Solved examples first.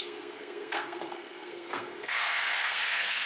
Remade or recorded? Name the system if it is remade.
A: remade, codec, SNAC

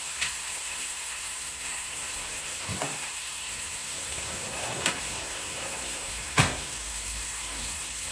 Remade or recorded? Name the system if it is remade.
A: remade, codec, SNAC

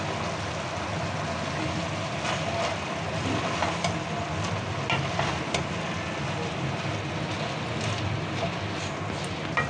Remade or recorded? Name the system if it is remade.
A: recorded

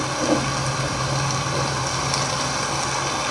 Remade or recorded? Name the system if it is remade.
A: recorded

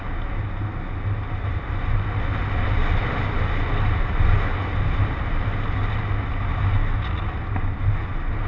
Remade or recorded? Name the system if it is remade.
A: recorded